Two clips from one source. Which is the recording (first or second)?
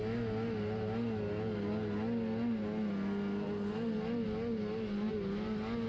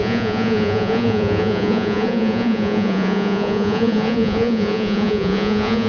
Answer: first